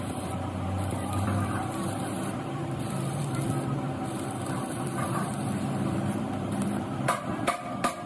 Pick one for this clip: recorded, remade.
remade